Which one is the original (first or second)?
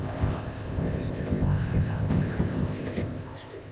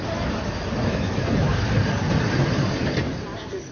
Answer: second